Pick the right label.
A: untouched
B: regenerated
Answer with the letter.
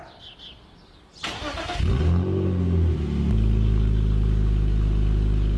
A